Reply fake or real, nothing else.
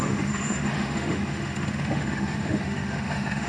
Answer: fake